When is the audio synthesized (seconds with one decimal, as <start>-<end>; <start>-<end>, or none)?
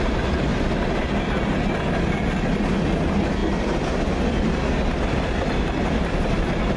none